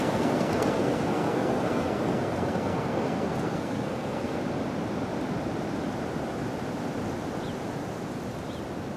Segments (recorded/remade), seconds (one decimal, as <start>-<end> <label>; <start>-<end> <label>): 0.0-4.4 remade; 4.4-9.0 recorded